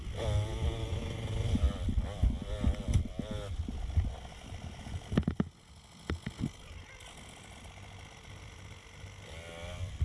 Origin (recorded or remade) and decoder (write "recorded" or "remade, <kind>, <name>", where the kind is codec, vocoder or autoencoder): recorded